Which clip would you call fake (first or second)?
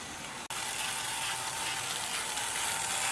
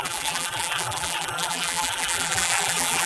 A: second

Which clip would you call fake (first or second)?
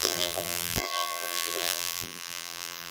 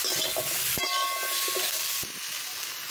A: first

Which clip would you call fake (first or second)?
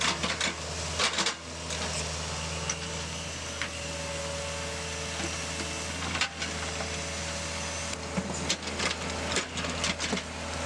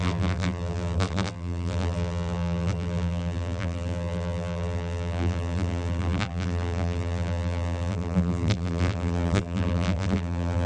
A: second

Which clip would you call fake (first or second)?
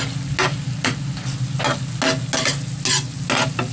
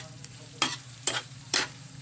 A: second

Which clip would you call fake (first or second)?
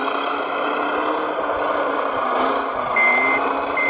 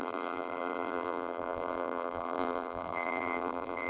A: second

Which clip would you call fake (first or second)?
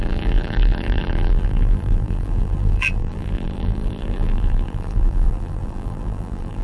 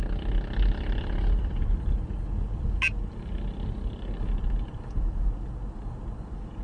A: first